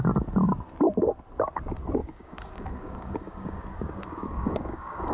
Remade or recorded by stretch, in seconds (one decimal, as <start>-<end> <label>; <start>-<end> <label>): 0.0-2.0 recorded; 2.0-5.1 remade